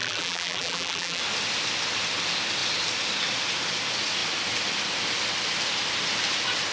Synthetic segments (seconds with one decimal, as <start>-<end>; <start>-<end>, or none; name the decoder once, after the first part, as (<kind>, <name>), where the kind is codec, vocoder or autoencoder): 0.0-1.2 (vocoder, BigVGAN v2)